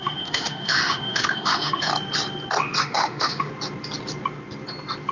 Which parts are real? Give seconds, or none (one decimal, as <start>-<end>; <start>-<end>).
1.9-2.8; 3.5-5.1